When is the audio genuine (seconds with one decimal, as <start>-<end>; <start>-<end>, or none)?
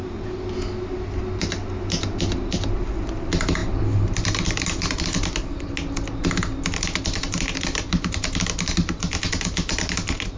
0.0-10.4